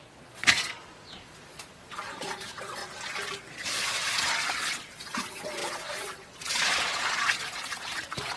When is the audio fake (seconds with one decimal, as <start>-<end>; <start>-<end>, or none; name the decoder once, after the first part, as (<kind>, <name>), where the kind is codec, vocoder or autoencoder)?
0.0-2.8 (vocoder, Vocos); 3.5-8.4